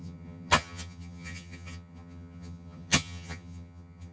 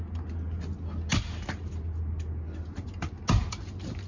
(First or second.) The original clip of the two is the second